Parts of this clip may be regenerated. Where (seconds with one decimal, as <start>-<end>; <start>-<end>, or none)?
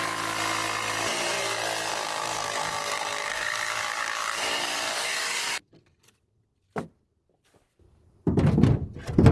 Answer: 1.9-5.7